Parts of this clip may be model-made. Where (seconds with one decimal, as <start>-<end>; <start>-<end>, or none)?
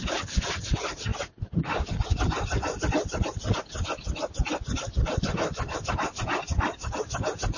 none